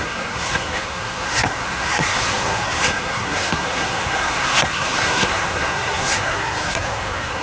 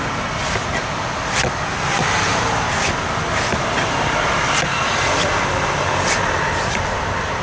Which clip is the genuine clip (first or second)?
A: second